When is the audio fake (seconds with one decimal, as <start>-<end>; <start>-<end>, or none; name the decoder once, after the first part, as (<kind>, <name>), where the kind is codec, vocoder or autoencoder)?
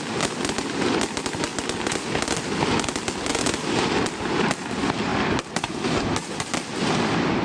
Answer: none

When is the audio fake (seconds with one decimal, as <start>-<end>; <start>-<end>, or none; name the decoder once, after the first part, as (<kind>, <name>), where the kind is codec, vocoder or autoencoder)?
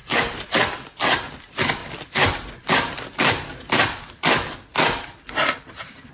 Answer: 0.0-0.6 (vocoder, BigVGAN v2)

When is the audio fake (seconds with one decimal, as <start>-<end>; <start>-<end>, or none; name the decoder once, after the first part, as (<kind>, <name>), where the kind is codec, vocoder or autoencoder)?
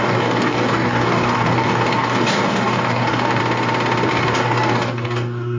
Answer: 0.0-3.4 (codec, DAC); 4.1-5.6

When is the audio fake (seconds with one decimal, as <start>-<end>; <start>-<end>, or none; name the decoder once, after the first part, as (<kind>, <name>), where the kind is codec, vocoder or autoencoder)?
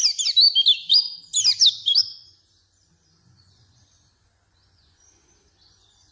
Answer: 2.0-6.1 (vocoder, Vocos)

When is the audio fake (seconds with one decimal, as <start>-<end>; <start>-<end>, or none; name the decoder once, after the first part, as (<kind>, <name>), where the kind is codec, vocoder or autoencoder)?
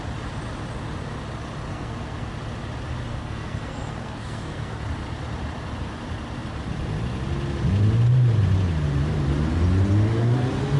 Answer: 1.7-2.3 (codec, SNAC); 3.1-4.8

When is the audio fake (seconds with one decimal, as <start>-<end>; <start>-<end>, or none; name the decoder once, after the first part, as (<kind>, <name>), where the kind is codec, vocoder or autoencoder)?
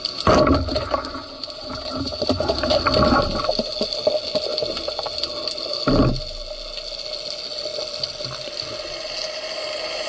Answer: 0.7-2.8 (vocoder, BigVGAN v2)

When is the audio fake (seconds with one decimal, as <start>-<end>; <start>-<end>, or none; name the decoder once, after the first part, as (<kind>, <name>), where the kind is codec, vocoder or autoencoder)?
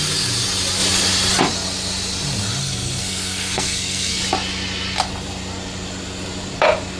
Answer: 2.6-4.2 (codec, SNAC)